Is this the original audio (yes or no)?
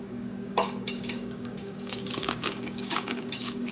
no